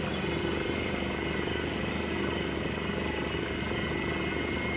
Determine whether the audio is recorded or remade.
remade